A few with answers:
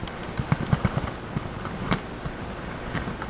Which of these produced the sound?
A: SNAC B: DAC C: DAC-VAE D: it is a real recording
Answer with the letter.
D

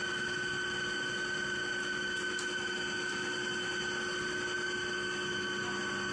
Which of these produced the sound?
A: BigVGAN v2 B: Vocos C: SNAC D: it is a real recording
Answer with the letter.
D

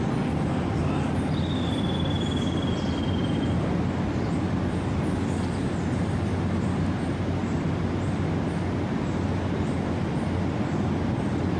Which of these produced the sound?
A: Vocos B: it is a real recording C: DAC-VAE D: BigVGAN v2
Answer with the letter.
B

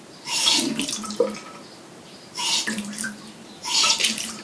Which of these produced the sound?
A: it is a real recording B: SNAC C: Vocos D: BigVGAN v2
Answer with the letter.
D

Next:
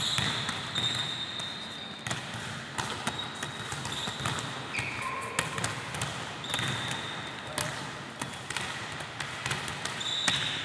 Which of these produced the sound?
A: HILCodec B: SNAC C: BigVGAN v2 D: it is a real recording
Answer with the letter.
D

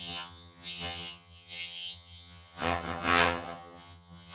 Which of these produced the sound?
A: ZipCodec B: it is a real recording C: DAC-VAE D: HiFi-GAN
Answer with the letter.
D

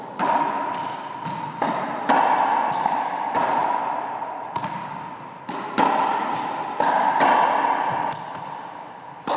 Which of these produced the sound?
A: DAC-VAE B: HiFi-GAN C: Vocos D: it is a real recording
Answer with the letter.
D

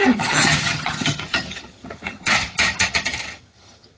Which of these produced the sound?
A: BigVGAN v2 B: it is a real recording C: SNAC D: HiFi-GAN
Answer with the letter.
D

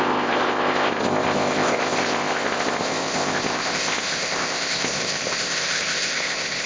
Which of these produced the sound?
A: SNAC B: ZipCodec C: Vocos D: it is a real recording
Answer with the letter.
B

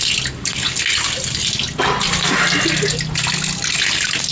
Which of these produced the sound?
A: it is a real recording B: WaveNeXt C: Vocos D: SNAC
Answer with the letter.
A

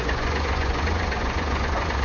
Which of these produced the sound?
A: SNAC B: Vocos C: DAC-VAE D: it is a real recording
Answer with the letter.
B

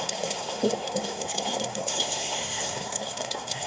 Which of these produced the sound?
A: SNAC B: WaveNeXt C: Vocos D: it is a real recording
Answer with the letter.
A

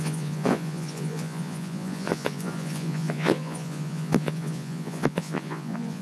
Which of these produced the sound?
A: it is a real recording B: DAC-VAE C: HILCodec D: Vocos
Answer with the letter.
D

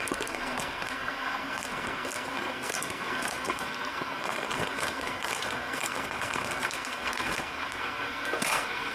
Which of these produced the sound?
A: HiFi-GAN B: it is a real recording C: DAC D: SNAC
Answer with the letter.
D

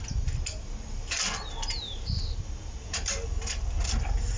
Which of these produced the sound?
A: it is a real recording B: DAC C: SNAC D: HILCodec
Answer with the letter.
A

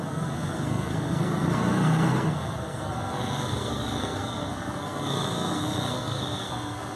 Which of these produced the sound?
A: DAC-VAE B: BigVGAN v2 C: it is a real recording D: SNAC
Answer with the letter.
D